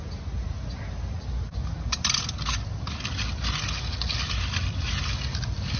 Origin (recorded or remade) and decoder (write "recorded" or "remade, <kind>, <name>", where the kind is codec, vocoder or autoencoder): recorded